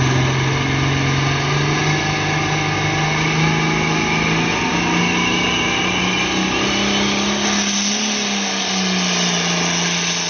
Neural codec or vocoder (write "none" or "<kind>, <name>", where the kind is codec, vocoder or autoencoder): none